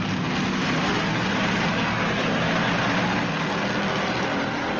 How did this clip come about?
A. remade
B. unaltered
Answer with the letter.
B